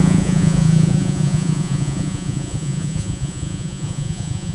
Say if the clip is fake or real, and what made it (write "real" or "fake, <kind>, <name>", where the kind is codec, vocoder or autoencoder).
fake, vocoder, Vocos